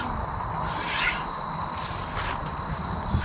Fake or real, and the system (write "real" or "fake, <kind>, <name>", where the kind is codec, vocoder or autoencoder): real